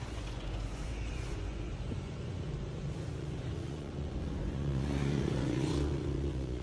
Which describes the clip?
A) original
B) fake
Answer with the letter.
B